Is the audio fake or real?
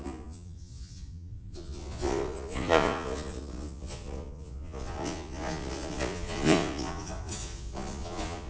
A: fake